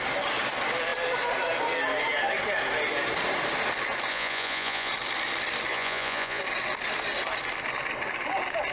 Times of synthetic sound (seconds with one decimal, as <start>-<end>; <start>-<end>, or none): 4.1-4.9; 5.7-6.4